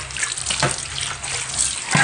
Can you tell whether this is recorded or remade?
recorded